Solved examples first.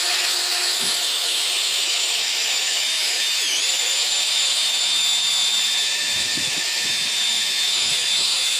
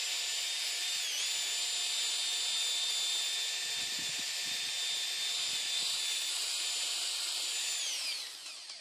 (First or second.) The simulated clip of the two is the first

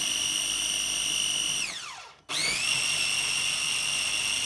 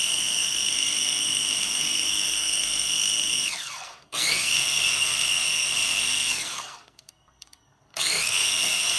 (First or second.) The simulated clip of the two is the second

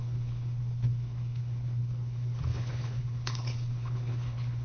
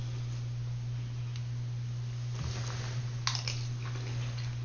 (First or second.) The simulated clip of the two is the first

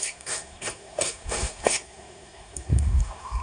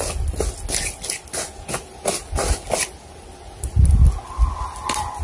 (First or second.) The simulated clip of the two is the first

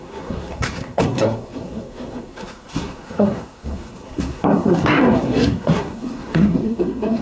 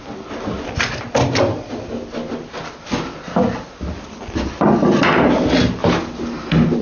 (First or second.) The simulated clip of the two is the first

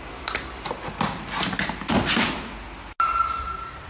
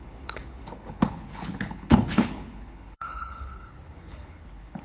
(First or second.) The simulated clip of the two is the second